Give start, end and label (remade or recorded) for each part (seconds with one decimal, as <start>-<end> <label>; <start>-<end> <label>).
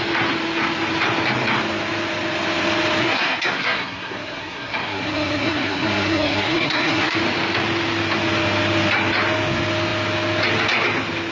0.0-3.0 recorded; 3.0-7.2 remade; 7.2-11.3 recorded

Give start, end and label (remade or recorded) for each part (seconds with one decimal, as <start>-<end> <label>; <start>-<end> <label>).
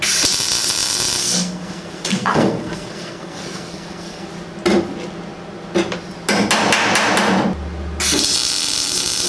0.0-1.2 recorded; 1.2-4.3 remade; 4.3-9.3 recorded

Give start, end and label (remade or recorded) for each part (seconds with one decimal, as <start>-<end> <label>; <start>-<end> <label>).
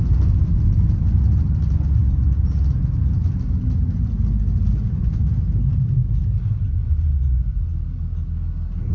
0.0-8.9 recorded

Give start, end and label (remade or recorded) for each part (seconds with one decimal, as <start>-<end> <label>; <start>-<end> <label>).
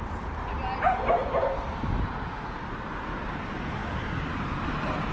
0.0-1.2 recorded; 1.2-2.9 remade; 2.9-3.8 recorded; 3.8-4.5 remade; 4.5-5.1 recorded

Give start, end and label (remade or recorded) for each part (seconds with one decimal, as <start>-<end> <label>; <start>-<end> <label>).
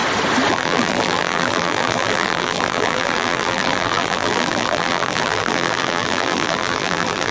0.0-0.5 recorded; 0.5-7.3 remade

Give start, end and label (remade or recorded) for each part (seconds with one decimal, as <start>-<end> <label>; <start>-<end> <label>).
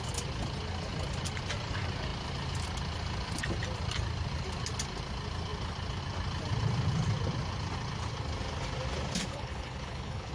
0.0-9.3 recorded; 9.3-10.3 remade